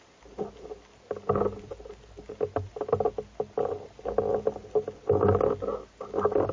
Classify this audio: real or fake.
real